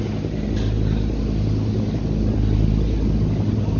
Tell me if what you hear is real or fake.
real